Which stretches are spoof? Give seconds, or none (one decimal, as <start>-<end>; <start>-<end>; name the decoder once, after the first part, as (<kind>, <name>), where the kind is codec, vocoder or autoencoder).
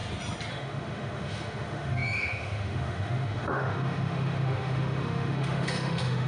0.5-6.3 (autoencoder, DAC-VAE)